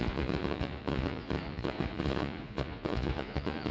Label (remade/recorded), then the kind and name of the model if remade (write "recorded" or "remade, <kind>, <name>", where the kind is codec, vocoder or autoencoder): remade, vocoder, Vocos